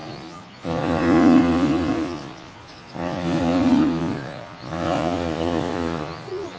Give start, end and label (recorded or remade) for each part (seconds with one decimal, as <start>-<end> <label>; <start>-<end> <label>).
0.0-6.6 remade